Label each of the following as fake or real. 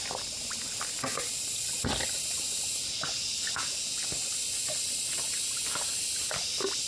real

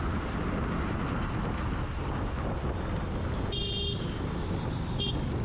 real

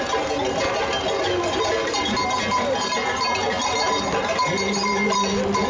real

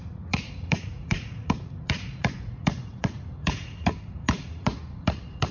fake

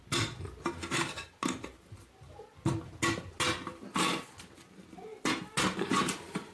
real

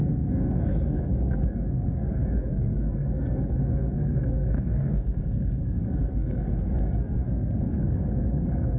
fake